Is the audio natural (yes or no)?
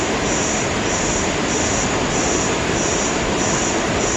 yes